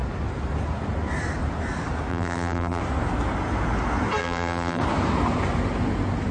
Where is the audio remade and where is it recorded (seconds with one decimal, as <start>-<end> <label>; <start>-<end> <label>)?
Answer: 0.0-2.1 recorded; 2.1-2.8 remade; 2.8-4.2 recorded; 4.2-4.8 remade; 4.8-6.3 recorded

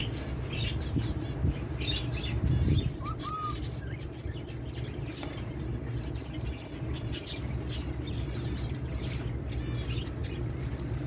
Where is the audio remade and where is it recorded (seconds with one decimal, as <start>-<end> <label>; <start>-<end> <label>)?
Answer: 0.0-4.2 remade; 4.2-6.2 recorded; 6.2-9.3 remade; 9.3-10.2 recorded; 10.2-11.1 remade

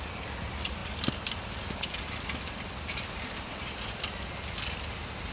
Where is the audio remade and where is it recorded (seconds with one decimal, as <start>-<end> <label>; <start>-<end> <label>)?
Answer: 0.0-0.8 recorded; 0.8-4.0 remade; 4.0-5.3 recorded